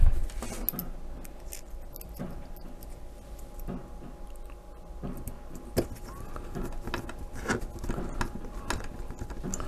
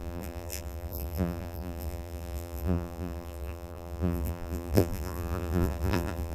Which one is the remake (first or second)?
second